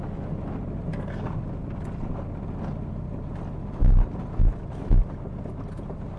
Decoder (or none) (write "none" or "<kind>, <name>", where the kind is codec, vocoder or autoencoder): none